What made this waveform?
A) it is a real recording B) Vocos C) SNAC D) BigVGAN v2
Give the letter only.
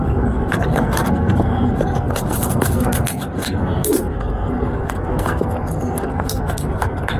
C